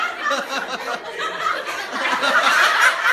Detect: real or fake fake